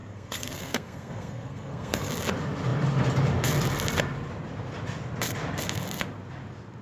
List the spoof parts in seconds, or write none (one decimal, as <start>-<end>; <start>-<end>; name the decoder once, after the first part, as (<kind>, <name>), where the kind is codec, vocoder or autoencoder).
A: 0.0-2.1 (codec, SNAC)

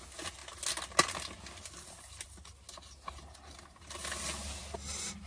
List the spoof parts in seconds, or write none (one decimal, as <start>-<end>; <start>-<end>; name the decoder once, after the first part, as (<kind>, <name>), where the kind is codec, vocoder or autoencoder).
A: none